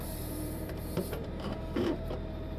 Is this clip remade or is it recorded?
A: remade